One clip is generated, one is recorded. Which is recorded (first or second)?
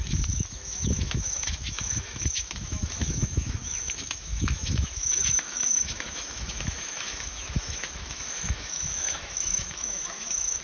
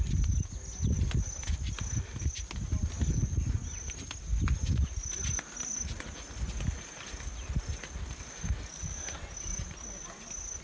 second